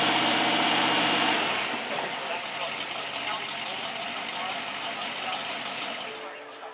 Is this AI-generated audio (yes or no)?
no